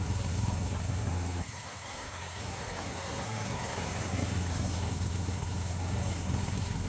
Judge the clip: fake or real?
fake